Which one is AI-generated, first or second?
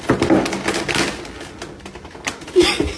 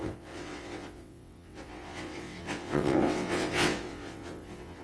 second